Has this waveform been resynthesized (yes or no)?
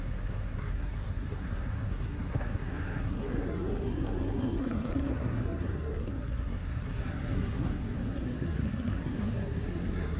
yes